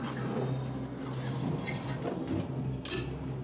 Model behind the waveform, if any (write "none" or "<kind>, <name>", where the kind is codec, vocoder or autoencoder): none